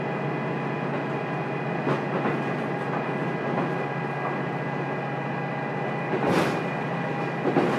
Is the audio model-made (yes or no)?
no